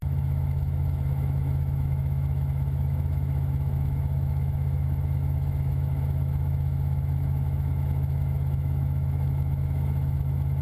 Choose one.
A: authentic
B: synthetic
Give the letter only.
B